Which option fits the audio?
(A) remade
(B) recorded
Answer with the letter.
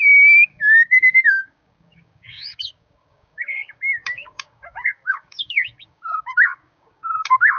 A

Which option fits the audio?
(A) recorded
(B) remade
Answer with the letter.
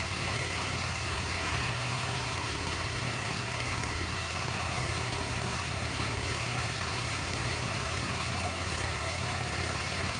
B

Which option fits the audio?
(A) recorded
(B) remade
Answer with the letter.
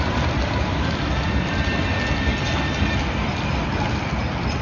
A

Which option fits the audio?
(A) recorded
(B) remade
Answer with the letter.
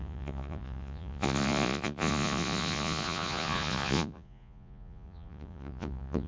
B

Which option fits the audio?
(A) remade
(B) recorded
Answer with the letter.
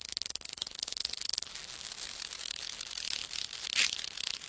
B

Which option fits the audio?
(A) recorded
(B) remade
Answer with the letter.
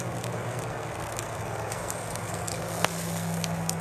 B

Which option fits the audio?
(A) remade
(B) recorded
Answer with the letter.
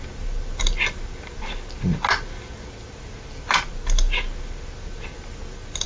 B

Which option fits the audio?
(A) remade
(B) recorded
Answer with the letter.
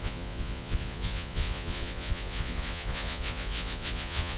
A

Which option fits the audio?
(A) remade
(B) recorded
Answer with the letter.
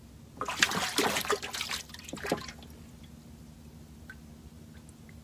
B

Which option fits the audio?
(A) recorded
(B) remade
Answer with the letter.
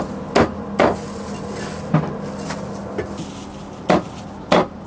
A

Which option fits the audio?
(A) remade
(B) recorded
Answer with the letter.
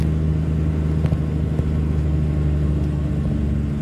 B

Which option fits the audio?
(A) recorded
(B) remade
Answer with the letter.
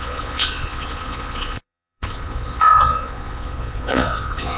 B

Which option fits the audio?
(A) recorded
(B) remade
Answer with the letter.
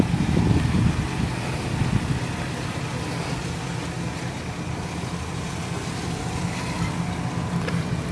A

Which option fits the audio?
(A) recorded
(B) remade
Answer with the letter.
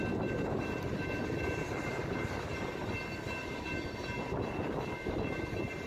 A